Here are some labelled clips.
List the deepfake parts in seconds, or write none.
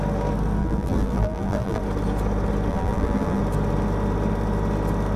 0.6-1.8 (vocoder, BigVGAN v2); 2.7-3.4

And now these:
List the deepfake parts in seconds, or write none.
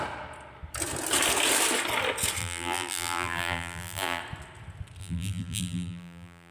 2.4-4.2 (vocoder, BigVGAN v2); 5.0-6.5